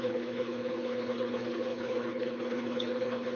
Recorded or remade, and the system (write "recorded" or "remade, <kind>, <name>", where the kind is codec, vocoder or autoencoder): remade, codec, HILCodec